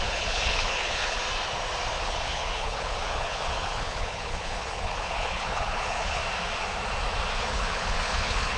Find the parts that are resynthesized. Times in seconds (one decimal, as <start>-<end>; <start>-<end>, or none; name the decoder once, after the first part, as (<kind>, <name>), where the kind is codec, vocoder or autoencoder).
0.0-1.2 (codec, HILCodec); 2.0-6.2; 7.4-8.6